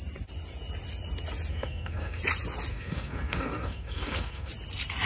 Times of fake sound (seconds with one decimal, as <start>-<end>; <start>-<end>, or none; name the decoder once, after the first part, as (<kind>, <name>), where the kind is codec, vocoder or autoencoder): 1.5-2.2 (codec, SNAC); 2.7-4.5